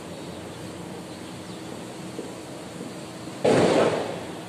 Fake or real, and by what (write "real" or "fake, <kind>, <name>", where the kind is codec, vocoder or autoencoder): real